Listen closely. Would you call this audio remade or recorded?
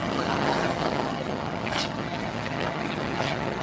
remade